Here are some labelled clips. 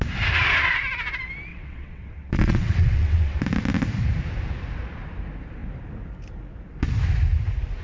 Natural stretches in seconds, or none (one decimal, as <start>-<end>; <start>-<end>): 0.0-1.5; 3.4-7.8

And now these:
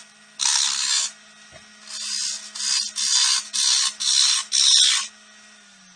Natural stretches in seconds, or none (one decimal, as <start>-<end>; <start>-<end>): 0.0-6.0

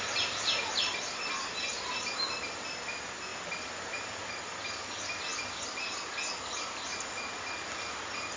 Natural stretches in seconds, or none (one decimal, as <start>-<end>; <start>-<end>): 0.0-8.4

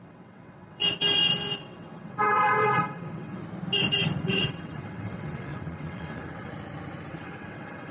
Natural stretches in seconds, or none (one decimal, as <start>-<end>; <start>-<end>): 0.8-1.6; 3.4-4.2; 6.5-7.1

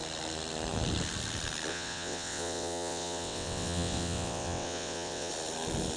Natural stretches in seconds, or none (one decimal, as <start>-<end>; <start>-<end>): 0.0-1.7; 5.3-6.0